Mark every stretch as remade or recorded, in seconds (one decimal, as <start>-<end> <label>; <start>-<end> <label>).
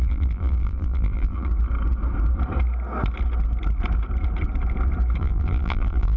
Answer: 0.0-1.5 remade; 1.5-5.2 recorded; 5.2-6.2 remade